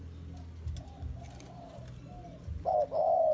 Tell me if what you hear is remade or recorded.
recorded